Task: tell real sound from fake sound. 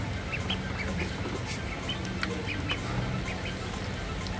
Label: real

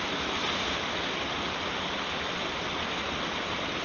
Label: real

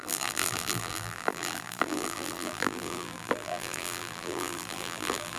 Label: fake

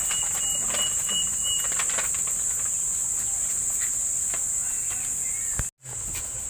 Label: real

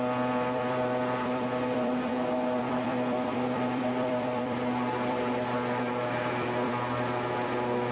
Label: fake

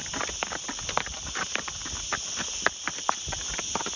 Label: fake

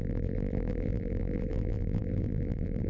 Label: fake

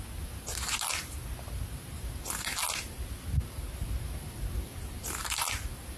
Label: fake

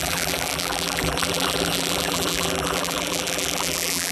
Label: fake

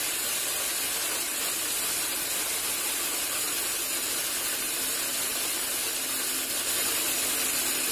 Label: real